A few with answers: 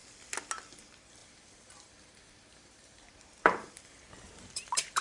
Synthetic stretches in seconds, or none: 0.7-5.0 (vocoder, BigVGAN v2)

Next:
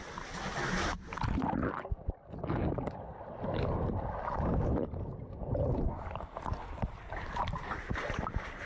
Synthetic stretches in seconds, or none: none

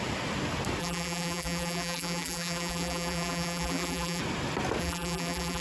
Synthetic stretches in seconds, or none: 0.8-4.2 (vocoder, BigVGAN v2); 4.8-5.6